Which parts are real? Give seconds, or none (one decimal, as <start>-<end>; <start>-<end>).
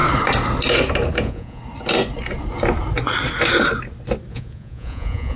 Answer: 0.0-1.2; 1.6-4.3